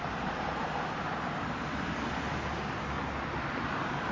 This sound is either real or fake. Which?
real